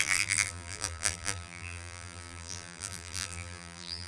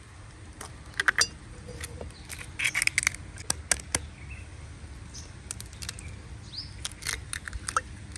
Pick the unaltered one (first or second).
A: second